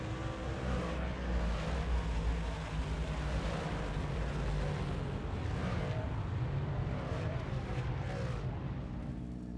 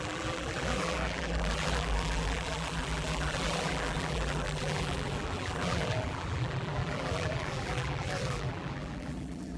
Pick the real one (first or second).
first